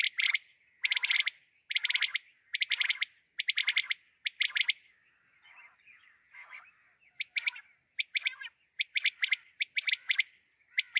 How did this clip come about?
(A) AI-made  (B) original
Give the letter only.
B